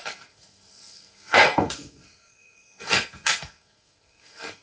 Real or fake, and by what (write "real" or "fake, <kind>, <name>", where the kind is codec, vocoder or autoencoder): fake, codec, SNAC